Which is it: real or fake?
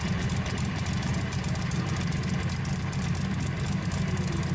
real